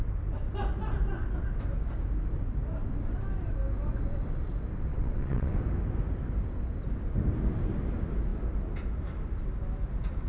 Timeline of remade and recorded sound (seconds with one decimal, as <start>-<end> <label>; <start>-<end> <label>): 0.0-4.9 recorded; 4.9-5.6 remade; 5.6-10.3 recorded